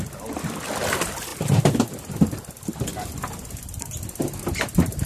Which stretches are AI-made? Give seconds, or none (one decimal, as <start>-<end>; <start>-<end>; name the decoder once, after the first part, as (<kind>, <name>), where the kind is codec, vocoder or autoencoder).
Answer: none